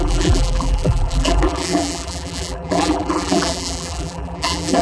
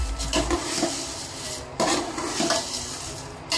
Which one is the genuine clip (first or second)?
second